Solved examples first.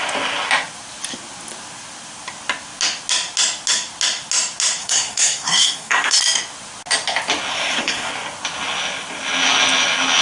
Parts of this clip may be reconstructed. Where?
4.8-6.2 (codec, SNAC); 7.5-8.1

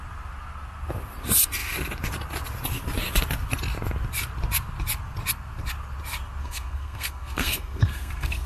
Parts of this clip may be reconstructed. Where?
6.4-8.5 (codec, SNAC)

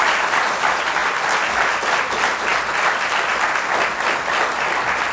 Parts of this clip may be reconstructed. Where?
none